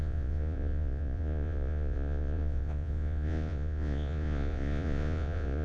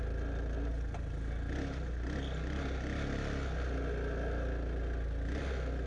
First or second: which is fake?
first